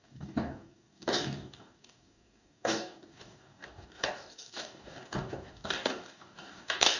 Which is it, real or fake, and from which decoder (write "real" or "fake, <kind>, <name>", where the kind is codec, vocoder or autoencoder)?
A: fake, codec, DAC